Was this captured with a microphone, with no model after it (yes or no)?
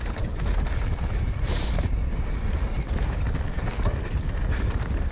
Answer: yes